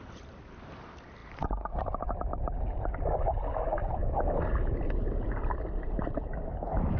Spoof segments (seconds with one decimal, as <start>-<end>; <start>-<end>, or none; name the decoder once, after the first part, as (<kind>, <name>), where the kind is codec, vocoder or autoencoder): none